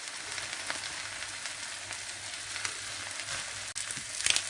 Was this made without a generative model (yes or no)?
yes